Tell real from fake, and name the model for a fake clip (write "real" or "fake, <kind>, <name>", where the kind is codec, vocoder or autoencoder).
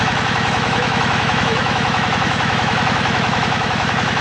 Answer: fake, autoencoder, DAC-VAE